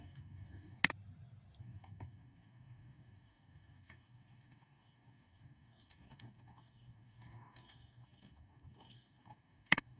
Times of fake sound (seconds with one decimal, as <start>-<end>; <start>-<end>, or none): 0.0-0.8; 1.6-10.0